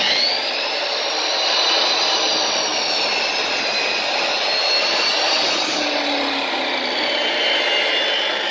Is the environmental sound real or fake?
real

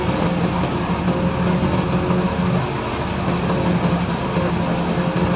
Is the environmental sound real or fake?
real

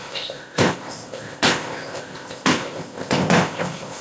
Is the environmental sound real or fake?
fake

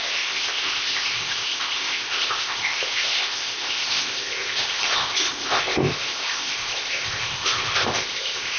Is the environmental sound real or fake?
fake